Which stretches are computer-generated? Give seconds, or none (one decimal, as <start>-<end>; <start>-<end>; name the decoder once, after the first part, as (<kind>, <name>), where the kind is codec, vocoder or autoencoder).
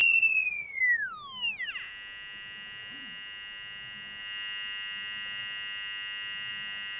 0.0-0.8 (vocoder, Vocos)